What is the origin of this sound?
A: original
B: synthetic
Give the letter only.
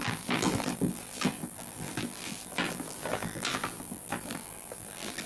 B